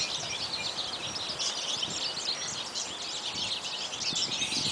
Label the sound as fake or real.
real